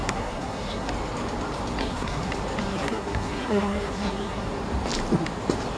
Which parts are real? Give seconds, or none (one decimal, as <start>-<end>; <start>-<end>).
0.9-1.8; 2.3-2.7; 4.5-5.8